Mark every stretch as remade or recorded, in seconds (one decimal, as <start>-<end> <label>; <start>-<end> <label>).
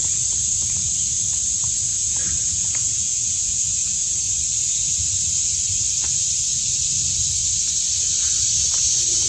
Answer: 0.0-1.9 recorded; 1.9-4.3 remade; 4.3-9.3 recorded